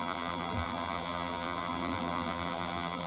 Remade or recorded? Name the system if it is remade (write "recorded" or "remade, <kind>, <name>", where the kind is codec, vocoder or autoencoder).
remade, vocoder, BigVGAN v2